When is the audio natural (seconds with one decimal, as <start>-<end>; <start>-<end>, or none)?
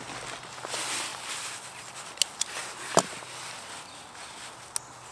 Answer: 0.0-5.1